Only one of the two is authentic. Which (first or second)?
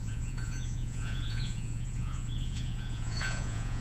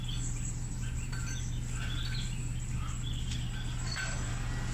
second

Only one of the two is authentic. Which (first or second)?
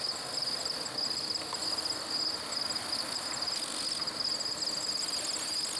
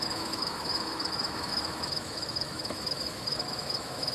first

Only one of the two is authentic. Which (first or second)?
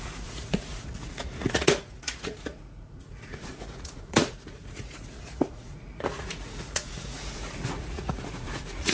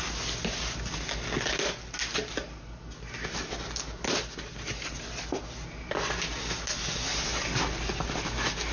second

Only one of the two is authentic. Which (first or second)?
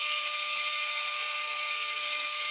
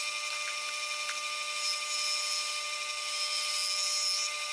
second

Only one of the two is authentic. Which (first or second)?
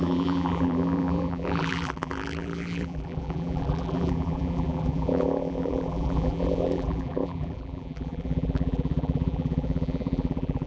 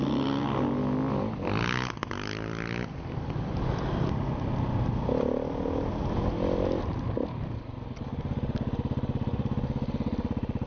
second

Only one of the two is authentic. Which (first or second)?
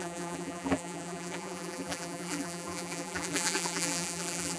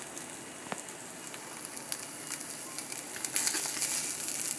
second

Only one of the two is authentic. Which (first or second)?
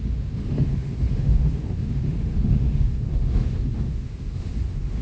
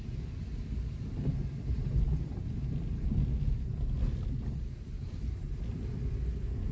second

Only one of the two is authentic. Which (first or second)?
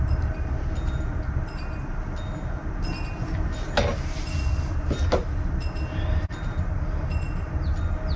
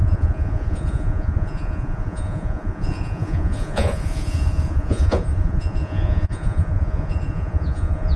first